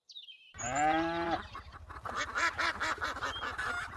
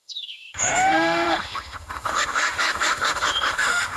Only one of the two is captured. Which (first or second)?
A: first